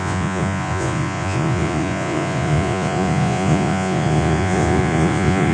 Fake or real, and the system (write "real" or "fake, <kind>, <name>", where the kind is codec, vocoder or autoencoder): fake, vocoder, Vocos